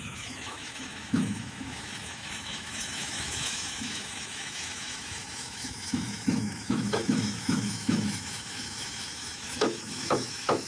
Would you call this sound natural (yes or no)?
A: no